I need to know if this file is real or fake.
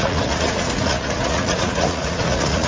fake